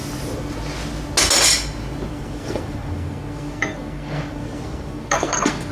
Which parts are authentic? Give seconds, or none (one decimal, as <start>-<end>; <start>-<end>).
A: 0.0-2.1

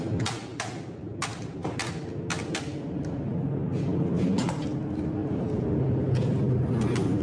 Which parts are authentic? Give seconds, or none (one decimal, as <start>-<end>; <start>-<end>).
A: 0.0-7.2

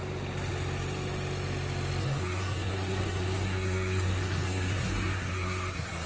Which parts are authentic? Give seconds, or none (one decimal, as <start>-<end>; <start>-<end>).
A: 0.0-2.0

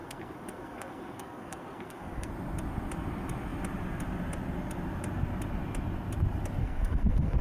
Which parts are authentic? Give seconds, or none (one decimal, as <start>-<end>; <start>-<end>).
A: 2.3-6.6